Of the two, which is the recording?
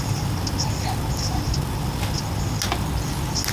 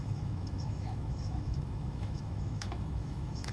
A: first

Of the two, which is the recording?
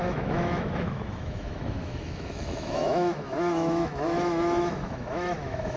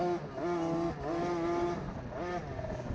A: second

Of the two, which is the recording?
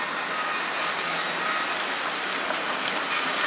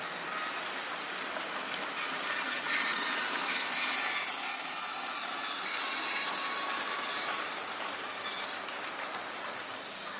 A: first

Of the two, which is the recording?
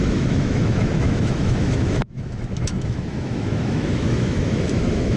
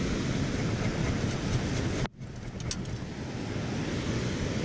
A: second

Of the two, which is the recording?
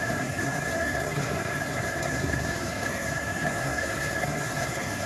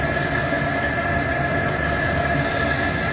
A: second